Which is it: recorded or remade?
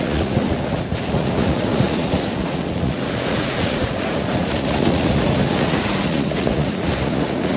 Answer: remade